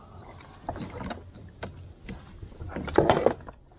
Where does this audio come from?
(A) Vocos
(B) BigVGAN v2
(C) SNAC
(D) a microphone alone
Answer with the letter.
D